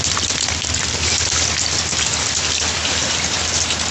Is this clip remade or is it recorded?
recorded